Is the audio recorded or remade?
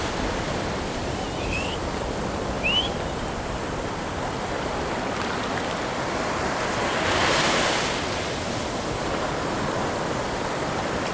recorded